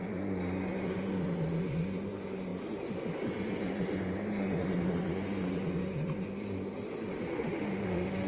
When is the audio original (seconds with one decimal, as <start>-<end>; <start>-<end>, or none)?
0.0-7.3